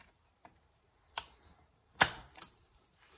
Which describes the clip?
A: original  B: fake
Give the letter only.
B